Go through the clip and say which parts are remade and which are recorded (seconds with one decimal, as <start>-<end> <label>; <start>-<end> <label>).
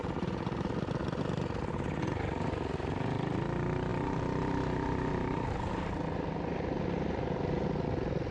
0.0-0.7 remade; 0.7-3.9 recorded; 3.9-5.9 remade; 5.9-8.3 recorded